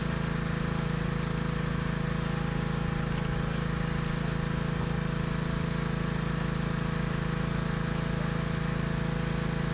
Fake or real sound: real